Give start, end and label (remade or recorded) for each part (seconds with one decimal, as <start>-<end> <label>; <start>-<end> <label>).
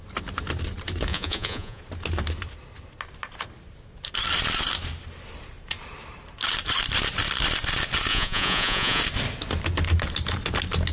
0.0-1.1 recorded; 1.1-1.8 remade; 1.8-8.1 recorded; 8.1-9.0 remade; 9.0-10.9 recorded